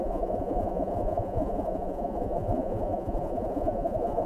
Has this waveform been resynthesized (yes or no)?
yes